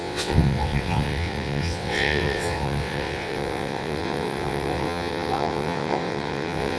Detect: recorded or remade remade